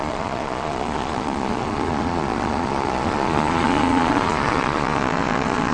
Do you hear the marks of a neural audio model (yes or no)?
yes